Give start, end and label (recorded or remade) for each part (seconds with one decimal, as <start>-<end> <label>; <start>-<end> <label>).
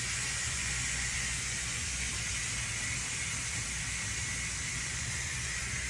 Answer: 0.0-2.1 remade; 2.1-4.8 recorded; 4.8-5.9 remade